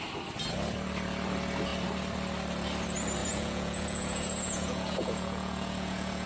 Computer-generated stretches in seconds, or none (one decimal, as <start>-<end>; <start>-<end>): 3.2-6.3